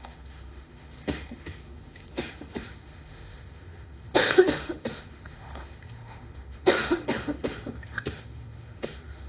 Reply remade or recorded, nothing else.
remade